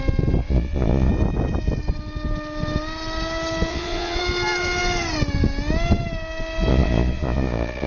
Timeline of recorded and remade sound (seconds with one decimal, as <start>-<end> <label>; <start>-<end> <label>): 0.0-0.4 recorded; 0.4-1.1 remade; 1.1-3.7 recorded; 3.7-4.2 remade; 4.2-6.7 recorded; 6.7-7.9 remade